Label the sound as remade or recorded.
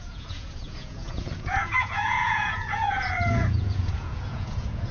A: remade